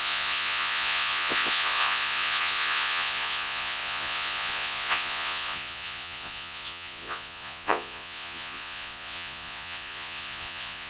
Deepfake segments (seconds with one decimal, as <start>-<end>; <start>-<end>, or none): 0.0-10.9